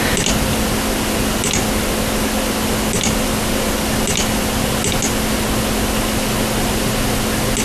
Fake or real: real